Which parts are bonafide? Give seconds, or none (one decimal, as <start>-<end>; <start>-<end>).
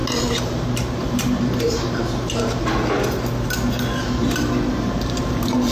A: 2.6-4.0